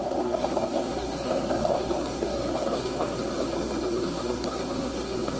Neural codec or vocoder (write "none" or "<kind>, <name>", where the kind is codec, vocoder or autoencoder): codec, SNAC